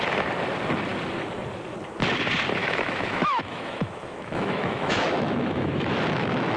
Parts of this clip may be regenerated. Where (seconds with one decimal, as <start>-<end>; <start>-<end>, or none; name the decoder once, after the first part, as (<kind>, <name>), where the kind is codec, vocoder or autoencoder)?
2.6-6.6 (autoencoder, DAC-VAE)